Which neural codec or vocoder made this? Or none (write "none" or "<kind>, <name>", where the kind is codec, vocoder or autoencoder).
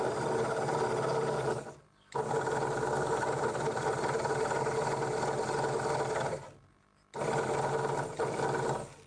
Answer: none